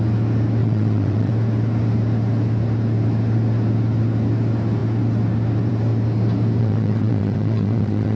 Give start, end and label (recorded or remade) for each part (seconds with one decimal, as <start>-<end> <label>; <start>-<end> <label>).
0.0-0.6 recorded; 0.6-1.3 remade; 1.3-6.6 recorded; 6.6-8.2 remade